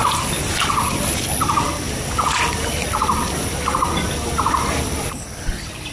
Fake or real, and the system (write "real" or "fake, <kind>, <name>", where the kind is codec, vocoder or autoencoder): real